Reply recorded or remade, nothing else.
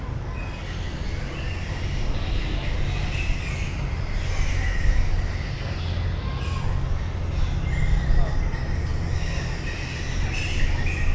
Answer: recorded